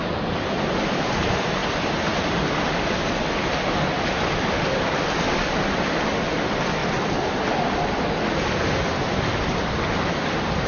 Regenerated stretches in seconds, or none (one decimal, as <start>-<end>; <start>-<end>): 0.0-6.8; 9.4-10.7